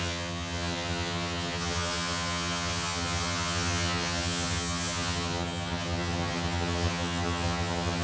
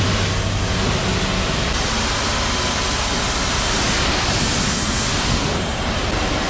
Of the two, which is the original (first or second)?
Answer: second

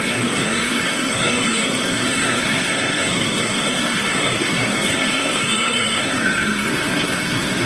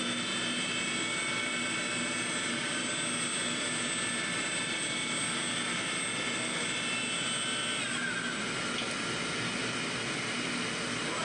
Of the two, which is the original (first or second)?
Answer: second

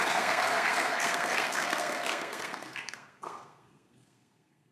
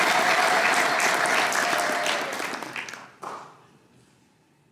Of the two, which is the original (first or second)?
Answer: second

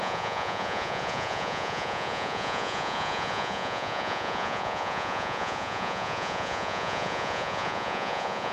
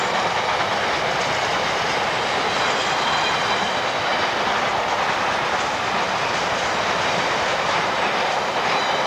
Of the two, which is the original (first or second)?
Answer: second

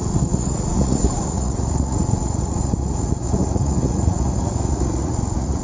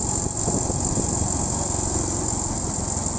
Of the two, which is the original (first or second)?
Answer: second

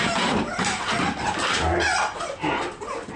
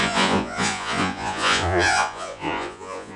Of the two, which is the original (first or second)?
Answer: first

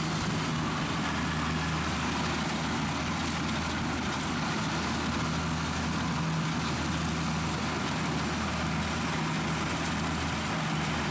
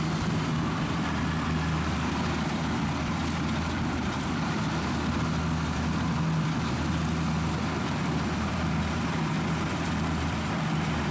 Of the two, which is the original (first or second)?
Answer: first